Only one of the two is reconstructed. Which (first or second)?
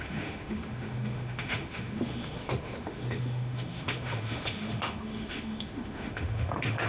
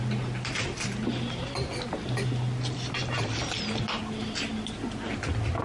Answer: first